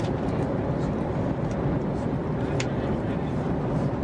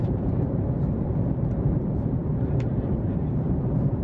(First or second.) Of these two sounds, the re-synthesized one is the second